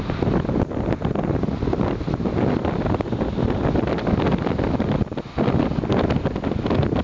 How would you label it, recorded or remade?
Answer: recorded